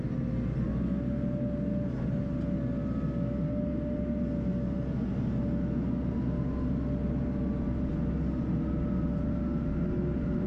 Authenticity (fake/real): real